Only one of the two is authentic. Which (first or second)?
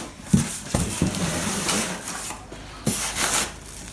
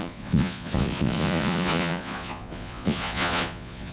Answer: first